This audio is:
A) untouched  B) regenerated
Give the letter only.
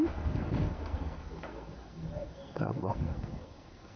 B